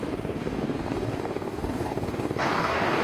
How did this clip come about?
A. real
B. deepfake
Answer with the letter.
B